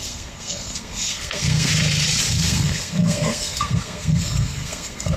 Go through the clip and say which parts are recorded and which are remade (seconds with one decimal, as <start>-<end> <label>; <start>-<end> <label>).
0.0-1.7 remade; 1.7-2.3 recorded; 2.3-5.2 remade